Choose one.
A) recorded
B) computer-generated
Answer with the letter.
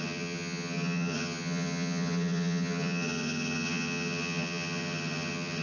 B